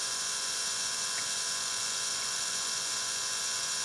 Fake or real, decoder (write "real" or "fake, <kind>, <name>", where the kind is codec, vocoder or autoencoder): fake, vocoder, Vocos